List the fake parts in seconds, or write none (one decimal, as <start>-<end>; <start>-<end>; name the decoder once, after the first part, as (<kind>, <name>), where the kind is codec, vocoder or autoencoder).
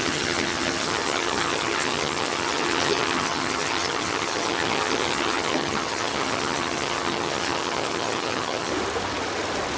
0.0-8.7 (vocoder, HiFi-GAN)